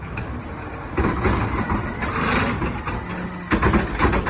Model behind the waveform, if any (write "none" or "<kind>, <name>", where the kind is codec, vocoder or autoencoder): none